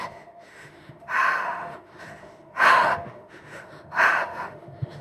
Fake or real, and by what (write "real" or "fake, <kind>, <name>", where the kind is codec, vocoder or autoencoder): fake, autoencoder, DAC-VAE